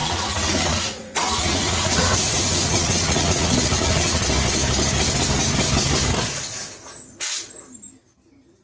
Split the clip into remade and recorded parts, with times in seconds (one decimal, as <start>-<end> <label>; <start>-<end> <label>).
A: 0.0-4.3 remade; 4.3-8.6 recorded